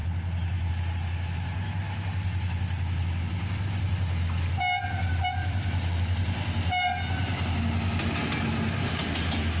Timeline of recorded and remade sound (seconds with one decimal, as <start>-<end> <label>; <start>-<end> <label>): 0.0-9.6 recorded